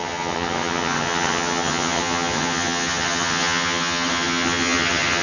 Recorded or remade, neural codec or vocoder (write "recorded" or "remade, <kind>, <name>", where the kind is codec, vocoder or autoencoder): remade, vocoder, HiFi-GAN